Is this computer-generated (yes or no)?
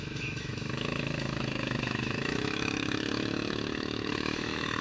yes